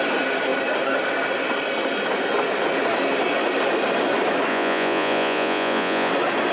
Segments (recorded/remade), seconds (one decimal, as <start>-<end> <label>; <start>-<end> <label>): 0.0-4.5 recorded; 4.5-6.1 remade; 6.1-6.5 recorded